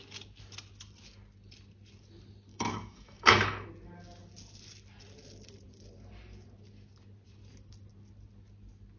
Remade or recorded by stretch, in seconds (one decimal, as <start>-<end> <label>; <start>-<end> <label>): 0.0-2.5 recorded; 2.5-3.7 remade; 3.7-9.0 recorded